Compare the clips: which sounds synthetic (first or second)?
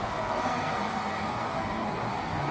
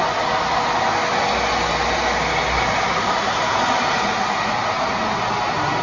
first